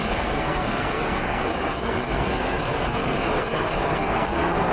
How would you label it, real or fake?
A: fake